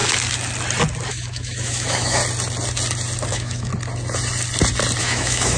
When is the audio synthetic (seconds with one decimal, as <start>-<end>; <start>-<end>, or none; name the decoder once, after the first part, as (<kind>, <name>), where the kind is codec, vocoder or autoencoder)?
1.1-2.2 (autoencoder, DAC-VAE); 3.3-3.7; 5.0-5.6